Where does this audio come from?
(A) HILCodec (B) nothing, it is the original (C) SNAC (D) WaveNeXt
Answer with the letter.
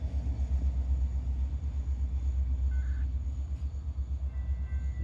B